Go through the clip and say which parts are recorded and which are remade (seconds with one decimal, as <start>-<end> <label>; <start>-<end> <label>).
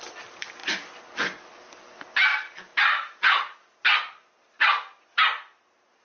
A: 0.0-6.0 recorded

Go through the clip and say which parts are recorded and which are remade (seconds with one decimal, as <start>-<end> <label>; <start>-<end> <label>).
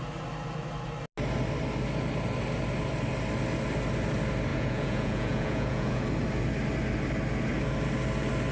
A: 0.0-4.5 recorded; 4.5-6.0 remade; 6.0-8.5 recorded